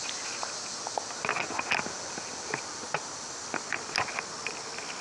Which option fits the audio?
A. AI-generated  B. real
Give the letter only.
B